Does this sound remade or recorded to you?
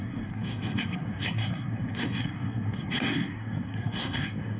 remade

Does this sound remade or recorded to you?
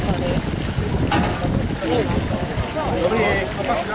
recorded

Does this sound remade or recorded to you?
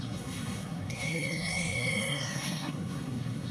remade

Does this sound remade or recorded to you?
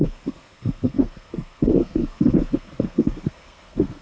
remade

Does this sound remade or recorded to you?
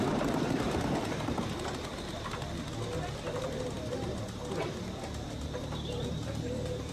recorded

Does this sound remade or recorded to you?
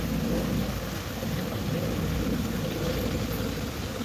recorded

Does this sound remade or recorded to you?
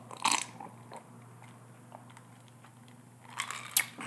recorded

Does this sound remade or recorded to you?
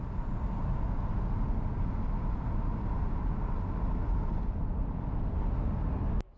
recorded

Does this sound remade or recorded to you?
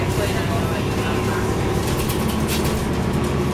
recorded